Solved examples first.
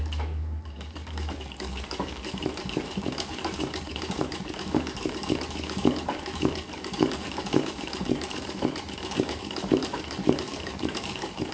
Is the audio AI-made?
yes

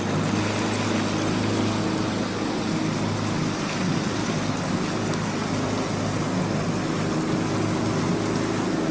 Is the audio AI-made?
no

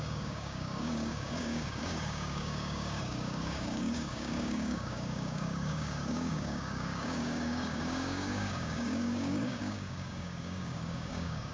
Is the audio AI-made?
yes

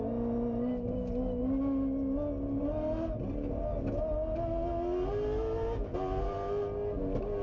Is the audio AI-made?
no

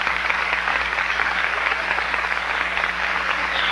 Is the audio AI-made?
yes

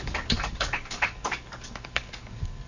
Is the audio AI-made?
yes